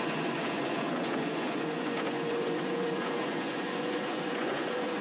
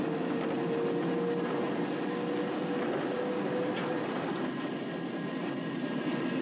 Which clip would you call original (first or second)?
second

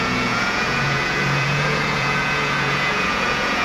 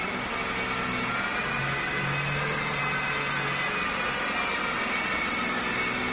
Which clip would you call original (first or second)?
second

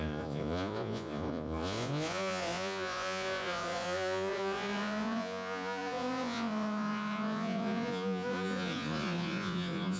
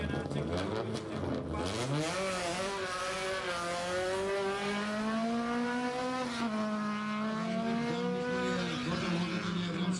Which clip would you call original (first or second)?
second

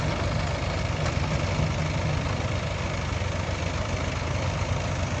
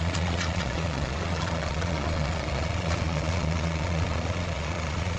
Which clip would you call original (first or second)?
first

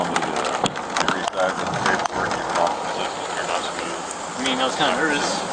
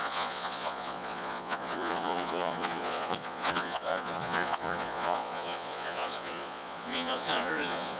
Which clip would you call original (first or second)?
first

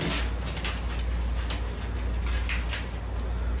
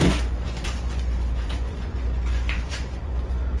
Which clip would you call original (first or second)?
first